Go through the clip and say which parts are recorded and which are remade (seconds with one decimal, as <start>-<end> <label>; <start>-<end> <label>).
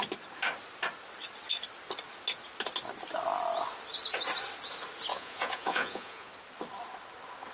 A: 0.0-5.1 recorded; 5.1-6.3 remade; 6.3-7.5 recorded